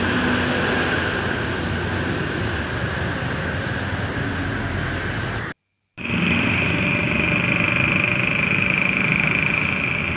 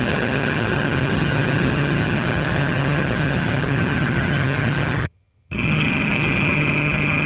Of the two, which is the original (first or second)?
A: first